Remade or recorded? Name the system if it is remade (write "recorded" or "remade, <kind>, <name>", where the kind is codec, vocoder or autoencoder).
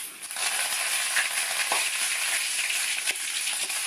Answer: recorded